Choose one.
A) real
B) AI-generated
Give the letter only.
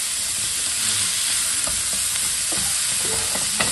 A